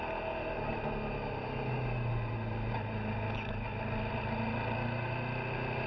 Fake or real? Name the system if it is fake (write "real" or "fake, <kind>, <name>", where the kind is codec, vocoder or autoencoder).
real